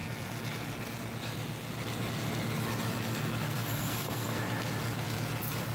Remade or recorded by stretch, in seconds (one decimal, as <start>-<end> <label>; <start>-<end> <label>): 0.0-3.4 recorded; 3.4-4.4 remade; 4.4-5.7 recorded